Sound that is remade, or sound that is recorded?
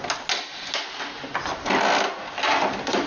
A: recorded